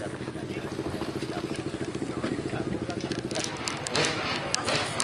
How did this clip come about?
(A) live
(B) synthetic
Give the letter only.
A